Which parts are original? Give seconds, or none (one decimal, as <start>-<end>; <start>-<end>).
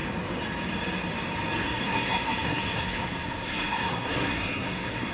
0.0-1.6